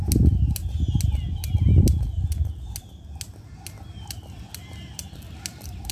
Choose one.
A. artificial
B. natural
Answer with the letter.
B